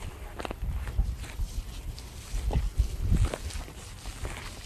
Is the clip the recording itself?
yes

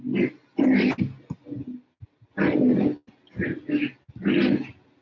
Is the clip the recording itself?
yes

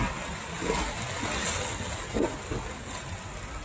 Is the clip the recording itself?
yes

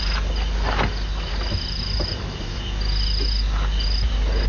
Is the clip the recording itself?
yes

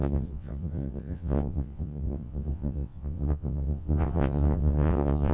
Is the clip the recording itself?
no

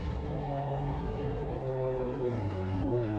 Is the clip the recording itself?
no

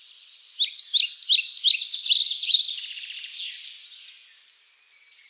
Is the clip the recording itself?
yes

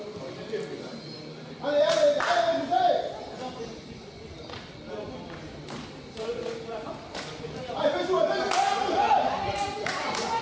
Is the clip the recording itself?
yes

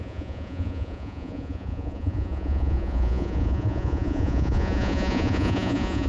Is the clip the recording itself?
no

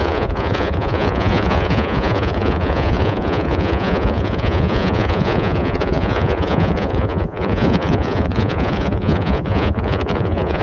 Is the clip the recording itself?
no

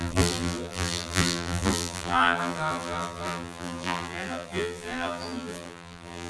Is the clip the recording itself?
no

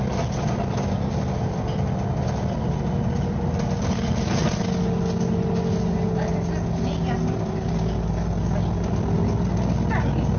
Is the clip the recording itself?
yes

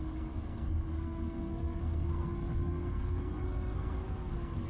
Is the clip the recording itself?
no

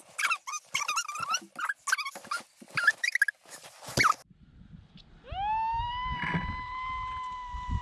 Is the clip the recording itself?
yes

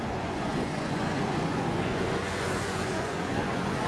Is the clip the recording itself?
no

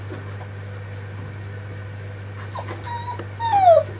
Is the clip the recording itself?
yes